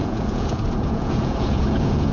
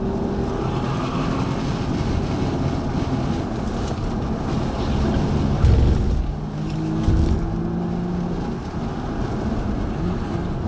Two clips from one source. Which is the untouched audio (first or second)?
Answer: second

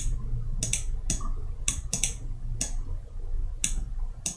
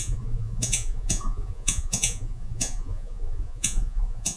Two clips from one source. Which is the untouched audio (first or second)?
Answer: first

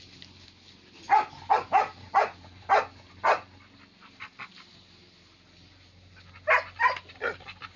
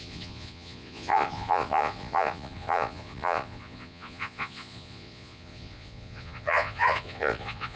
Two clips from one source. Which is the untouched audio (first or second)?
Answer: first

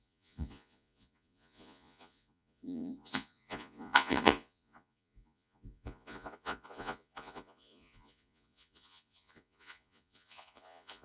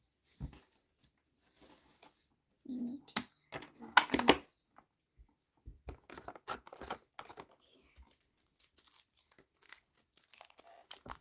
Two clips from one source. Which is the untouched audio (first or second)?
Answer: second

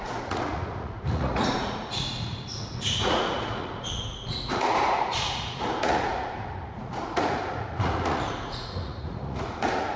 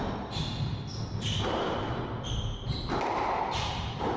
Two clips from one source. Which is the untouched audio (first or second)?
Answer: second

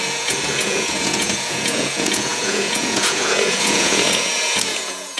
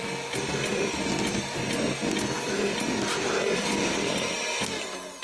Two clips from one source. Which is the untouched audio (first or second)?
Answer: second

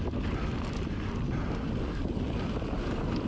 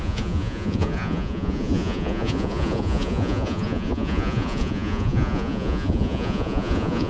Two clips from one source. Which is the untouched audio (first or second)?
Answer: first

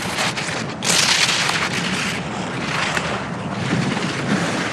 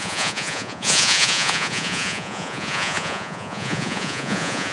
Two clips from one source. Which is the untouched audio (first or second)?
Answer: first